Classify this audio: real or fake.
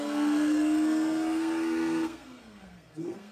fake